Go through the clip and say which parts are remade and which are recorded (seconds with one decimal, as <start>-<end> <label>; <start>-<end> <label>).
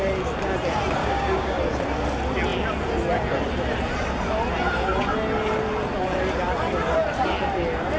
0.0-1.0 recorded; 1.0-1.6 remade; 1.6-8.0 recorded